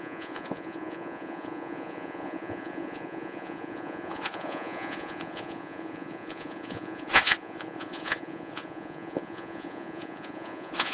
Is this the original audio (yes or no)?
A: no